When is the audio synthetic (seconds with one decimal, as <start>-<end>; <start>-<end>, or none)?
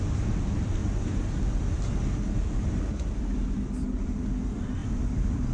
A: none